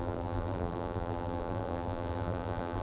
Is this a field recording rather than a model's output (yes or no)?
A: no